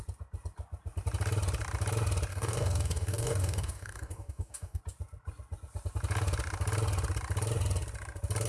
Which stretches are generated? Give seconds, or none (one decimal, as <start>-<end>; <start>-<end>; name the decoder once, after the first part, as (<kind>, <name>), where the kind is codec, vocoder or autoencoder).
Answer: 2.3-4.8 (codec, DAC)